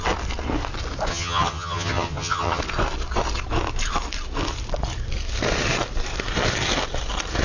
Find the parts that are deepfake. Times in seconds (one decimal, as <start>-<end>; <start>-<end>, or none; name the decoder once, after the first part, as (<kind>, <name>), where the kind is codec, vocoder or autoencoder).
1.1-2.6 (vocoder, HiFi-GAN)